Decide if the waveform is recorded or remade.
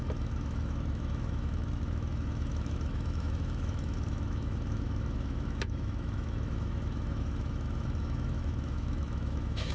remade